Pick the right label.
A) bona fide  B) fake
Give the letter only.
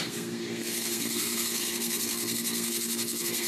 B